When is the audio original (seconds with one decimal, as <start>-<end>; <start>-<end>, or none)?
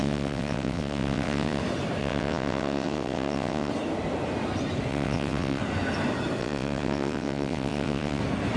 1.6-2.0; 3.7-4.9; 5.6-6.4; 8.2-8.6